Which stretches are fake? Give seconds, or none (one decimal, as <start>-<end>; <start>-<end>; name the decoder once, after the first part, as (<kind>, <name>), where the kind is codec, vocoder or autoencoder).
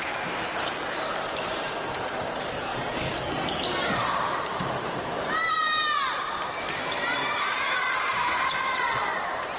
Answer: 0.0-2.7 (vocoder, BigVGAN v2); 4.0-9.6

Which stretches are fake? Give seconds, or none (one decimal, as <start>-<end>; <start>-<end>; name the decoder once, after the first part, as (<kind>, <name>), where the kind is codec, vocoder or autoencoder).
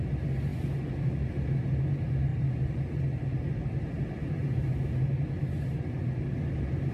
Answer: none